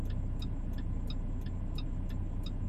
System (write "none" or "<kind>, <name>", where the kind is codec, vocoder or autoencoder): none